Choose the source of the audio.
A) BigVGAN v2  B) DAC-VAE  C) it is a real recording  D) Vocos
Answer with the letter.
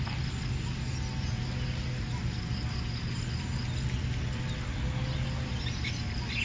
C